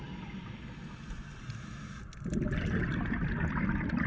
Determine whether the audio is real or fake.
real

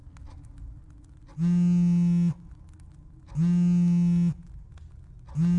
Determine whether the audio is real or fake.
real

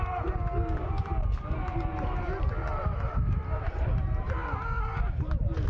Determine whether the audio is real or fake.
real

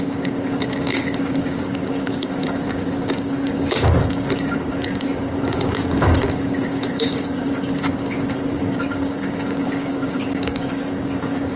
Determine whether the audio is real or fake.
fake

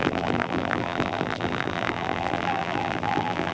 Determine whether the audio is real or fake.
fake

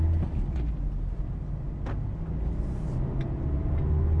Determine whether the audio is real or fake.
real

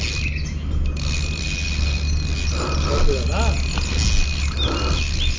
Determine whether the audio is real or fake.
real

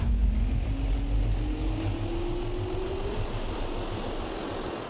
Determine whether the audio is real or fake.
real